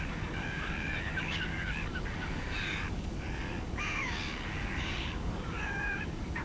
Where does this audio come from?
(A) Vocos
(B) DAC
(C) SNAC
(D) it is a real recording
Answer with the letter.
B